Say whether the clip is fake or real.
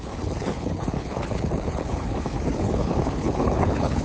fake